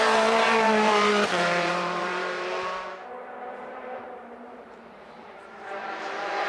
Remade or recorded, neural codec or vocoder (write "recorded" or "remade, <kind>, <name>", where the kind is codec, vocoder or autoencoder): remade, vocoder, BigVGAN v2